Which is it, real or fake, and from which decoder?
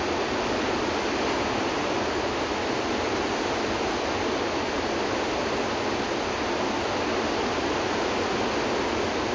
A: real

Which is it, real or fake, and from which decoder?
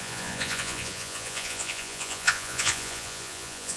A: fake, vocoder, Vocos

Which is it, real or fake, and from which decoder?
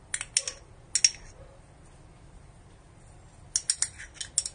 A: real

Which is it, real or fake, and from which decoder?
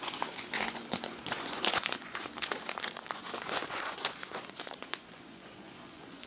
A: fake, vocoder, Vocos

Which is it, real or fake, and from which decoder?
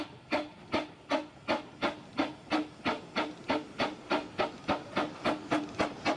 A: real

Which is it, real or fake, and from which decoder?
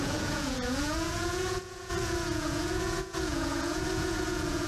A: fake, vocoder, Vocos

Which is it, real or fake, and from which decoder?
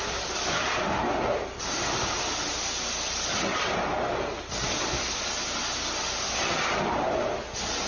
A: real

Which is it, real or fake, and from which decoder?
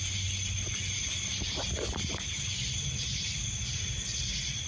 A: real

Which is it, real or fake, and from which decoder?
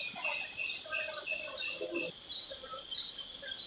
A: real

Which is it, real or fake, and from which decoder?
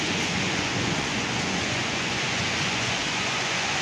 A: fake, vocoder, Vocos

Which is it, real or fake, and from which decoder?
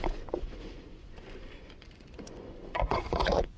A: fake, vocoder, Vocos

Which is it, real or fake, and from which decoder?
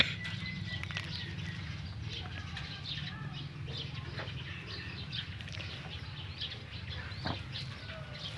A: real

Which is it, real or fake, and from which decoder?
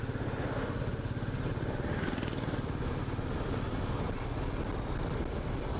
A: real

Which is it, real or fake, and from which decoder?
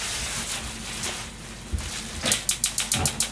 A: real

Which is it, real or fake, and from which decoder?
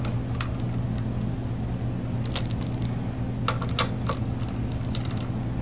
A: real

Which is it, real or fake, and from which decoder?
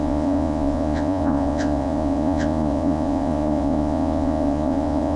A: fake, vocoder, Vocos